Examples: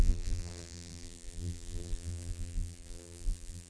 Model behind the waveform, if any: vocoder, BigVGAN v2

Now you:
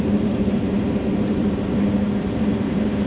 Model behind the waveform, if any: vocoder, BigVGAN v2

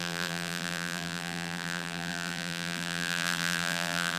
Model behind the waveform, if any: vocoder, BigVGAN v2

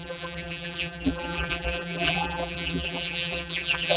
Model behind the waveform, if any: vocoder, BigVGAN v2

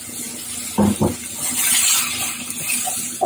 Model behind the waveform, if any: none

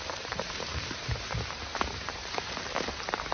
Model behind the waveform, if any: vocoder, BigVGAN v2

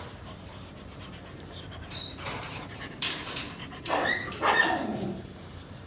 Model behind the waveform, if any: vocoder, BigVGAN v2